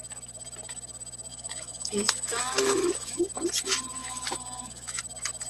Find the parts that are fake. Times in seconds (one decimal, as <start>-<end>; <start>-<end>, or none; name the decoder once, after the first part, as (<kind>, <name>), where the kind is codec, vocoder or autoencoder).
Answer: 1.3-3.2 (autoencoder, DAC-VAE); 4.0-5.0